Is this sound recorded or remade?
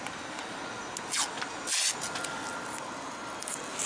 recorded